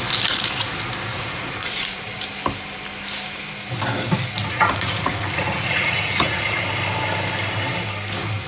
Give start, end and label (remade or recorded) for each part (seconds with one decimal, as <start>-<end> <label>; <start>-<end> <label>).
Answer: 0.0-1.1 recorded; 1.1-2.0 remade; 2.0-4.4 recorded; 4.4-6.6 remade; 6.6-8.5 recorded